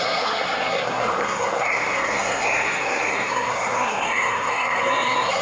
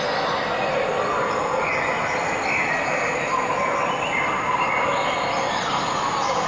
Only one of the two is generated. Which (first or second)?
first